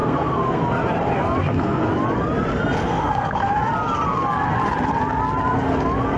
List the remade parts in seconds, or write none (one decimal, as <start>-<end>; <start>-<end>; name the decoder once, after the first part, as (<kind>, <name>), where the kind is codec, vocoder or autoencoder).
0.0-0.6 (codec, SNAC); 1.4-1.9; 2.8-3.5